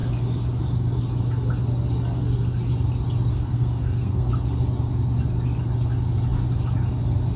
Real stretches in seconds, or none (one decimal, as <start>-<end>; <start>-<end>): 0.0-3.3; 4.3-7.4